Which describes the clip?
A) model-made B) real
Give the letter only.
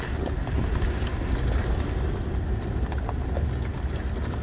B